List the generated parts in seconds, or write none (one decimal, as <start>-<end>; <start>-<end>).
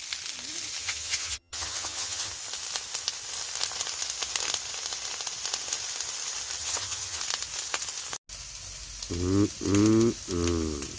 0.8-2.3; 6.6-7.2